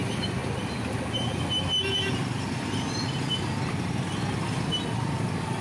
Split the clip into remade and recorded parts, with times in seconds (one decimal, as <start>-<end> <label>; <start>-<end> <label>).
0.0-5.6 recorded